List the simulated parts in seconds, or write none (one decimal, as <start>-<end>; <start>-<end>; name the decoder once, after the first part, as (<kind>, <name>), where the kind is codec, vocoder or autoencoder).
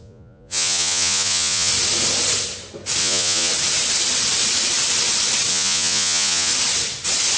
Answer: 0.0-1.7 (vocoder, Vocos); 3.0-3.5; 5.5-6.5